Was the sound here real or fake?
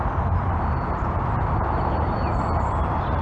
fake